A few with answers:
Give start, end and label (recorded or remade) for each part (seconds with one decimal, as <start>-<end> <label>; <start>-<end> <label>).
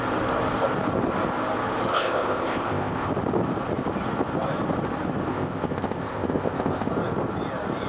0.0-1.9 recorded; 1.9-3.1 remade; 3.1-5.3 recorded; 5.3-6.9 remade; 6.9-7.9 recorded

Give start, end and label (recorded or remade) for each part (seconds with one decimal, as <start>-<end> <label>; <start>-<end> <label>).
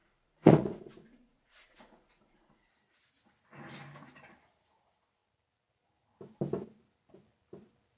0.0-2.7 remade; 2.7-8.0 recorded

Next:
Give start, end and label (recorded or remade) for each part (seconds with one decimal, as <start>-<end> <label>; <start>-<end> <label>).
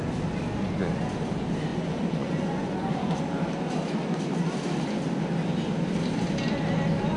0.0-1.7 recorded; 1.7-3.2 remade; 3.2-7.2 recorded